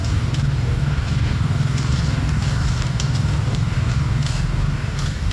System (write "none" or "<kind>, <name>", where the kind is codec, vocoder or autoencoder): codec, DAC